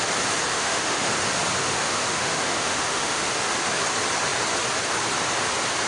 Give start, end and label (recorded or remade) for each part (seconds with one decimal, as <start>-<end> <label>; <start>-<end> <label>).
0.0-0.5 recorded; 0.5-1.1 remade; 1.1-1.6 recorded; 1.6-3.3 remade; 3.3-5.9 recorded